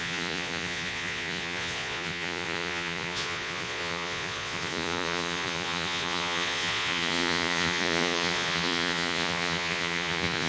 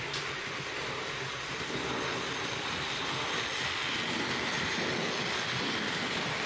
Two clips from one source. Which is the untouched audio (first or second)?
second